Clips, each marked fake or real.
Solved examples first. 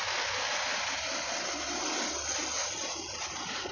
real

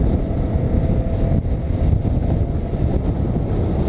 real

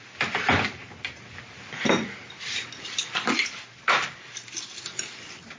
real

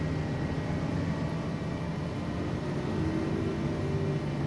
real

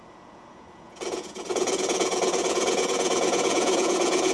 fake